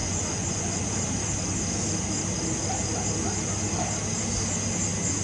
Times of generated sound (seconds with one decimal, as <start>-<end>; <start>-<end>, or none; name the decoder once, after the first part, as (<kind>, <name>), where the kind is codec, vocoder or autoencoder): 0.0-0.8 (vocoder, Vocos)